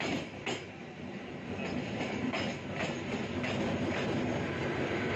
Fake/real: real